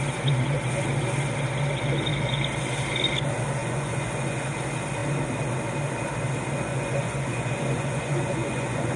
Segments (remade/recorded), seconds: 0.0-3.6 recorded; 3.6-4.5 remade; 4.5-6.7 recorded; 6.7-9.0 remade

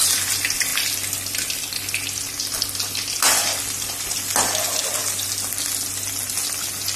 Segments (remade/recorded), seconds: 0.0-7.0 recorded